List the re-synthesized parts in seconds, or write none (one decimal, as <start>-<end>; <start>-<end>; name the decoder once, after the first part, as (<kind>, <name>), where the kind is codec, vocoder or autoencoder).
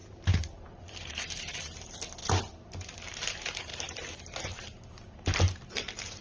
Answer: 0.0-2.2 (vocoder, BigVGAN v2); 3.3-3.7; 5.7-6.2